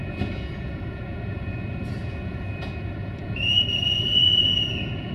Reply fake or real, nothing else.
fake